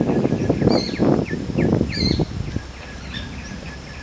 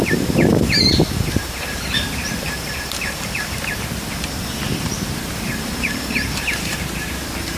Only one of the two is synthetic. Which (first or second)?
second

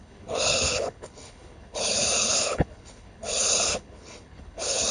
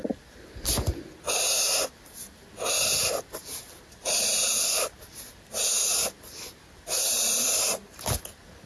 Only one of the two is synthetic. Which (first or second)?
first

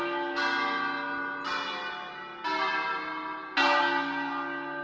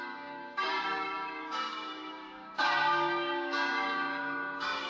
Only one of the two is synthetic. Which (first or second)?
second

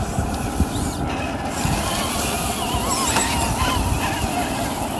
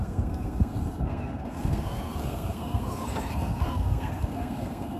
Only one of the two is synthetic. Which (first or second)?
second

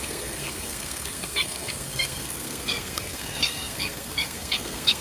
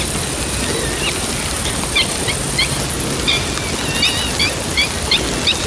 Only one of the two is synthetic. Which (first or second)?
first